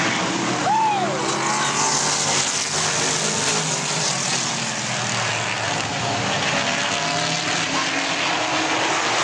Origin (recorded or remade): recorded